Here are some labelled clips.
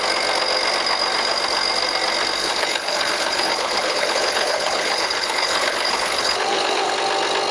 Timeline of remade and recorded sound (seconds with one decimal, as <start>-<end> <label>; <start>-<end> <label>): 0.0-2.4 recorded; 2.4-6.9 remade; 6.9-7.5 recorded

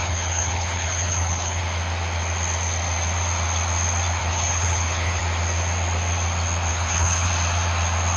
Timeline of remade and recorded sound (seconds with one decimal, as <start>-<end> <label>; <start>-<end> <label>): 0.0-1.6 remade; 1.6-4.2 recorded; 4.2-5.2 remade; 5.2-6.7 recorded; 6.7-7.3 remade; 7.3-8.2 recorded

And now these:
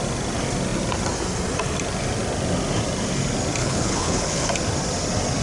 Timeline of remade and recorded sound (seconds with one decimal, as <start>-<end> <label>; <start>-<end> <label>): 0.0-3.6 recorded; 3.6-4.5 remade; 4.5-5.4 recorded